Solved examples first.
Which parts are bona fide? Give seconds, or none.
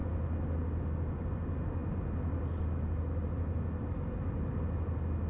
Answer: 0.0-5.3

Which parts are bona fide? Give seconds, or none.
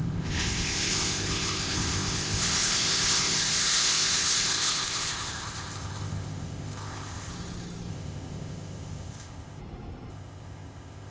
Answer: 7.3-7.9; 9.6-10.1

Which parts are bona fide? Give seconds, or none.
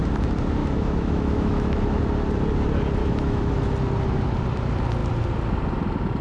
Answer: 0.0-0.6; 2.0-3.0; 3.7-6.2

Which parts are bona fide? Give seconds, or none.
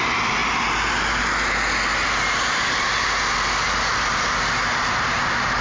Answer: 0.0-1.9; 3.1-5.6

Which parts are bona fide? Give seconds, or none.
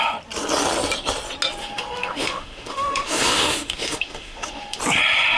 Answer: 0.0-1.6; 4.8-5.4